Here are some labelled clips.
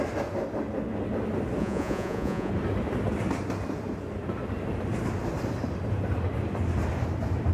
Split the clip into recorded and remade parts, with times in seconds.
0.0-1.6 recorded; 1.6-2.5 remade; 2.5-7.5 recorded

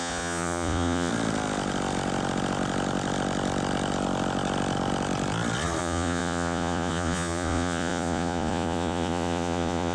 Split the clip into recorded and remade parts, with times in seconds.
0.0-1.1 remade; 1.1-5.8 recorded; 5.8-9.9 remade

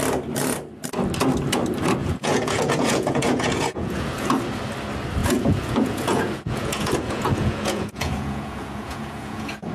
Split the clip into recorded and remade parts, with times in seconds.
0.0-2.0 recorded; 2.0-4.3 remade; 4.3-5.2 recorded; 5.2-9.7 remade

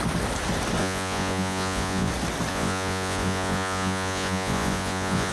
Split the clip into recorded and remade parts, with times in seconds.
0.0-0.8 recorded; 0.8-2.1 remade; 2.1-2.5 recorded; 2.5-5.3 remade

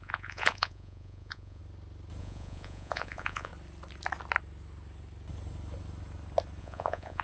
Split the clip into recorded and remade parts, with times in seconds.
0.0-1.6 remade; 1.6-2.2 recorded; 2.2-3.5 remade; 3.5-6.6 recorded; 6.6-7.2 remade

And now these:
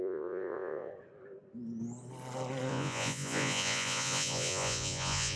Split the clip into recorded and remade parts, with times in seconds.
0.0-0.9 remade; 0.9-2.7 recorded; 2.7-5.4 remade

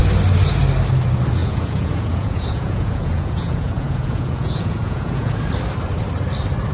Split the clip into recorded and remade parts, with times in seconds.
0.0-1.4 recorded; 1.4-5.4 remade; 5.4-6.7 recorded

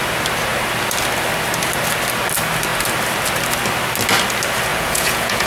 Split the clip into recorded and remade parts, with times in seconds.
0.0-4.7 recorded; 4.7-5.5 remade